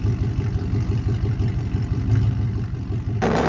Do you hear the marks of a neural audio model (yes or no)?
no